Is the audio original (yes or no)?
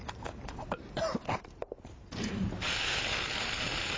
no